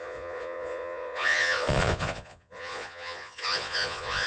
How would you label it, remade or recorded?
remade